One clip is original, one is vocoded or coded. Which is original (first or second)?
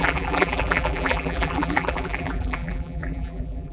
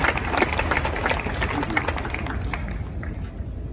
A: second